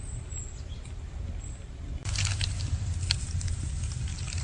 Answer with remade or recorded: recorded